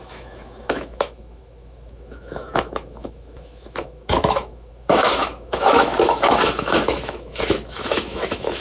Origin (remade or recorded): remade